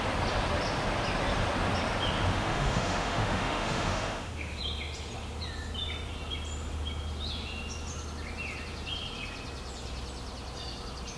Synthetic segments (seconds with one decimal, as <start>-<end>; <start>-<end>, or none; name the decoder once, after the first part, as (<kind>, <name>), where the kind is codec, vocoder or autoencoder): 2.3-4.6 (autoencoder, DAC-VAE)